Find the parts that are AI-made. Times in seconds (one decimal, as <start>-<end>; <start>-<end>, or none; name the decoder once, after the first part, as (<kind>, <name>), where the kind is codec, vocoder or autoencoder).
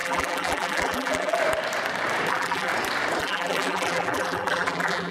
0.0-1.4 (vocoder, BigVGAN v2); 2.3-2.7; 3.2-5.1